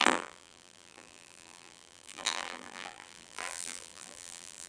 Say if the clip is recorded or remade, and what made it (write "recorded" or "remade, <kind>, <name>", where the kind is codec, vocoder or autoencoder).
remade, vocoder, BigVGAN v2